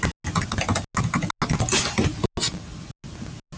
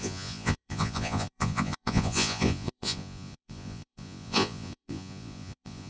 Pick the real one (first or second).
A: first